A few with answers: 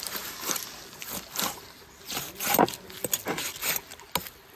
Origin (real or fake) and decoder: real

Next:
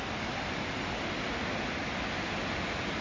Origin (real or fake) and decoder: real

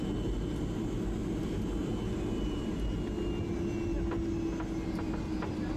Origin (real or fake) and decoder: real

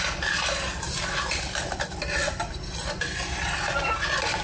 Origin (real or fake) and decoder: real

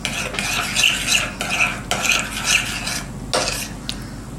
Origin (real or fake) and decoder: real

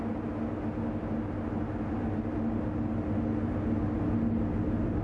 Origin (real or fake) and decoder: real